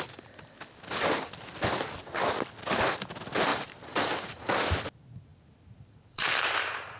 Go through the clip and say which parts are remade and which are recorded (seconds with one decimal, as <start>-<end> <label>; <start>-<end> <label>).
0.0-3.5 recorded; 3.5-4.5 remade; 4.5-5.3 recorded; 5.3-7.0 remade